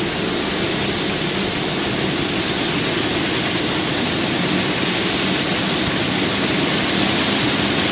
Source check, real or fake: real